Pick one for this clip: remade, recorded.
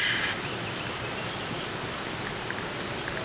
recorded